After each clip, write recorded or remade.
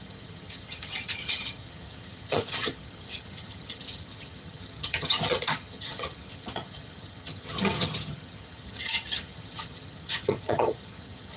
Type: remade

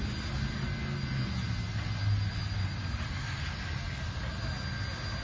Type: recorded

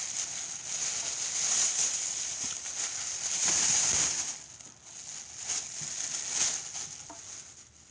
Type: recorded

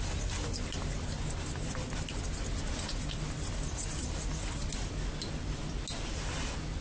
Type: recorded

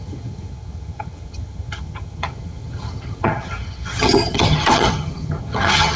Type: remade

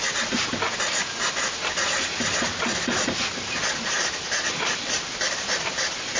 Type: recorded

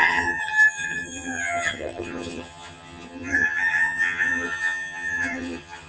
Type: remade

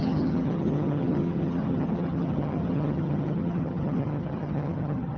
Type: remade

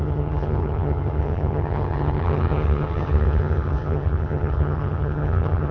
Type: remade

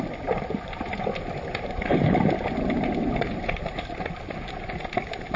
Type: recorded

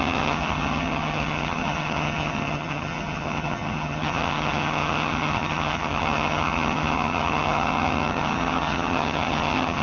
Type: remade